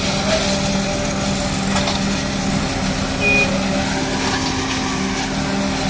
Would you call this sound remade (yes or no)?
no